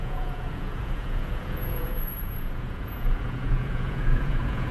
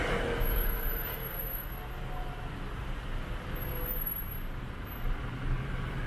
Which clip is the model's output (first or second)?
first